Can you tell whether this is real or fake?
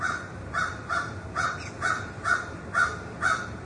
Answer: real